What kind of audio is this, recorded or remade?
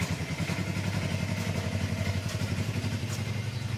recorded